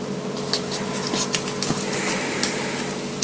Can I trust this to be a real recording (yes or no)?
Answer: yes